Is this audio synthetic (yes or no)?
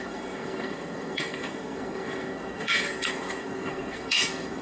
yes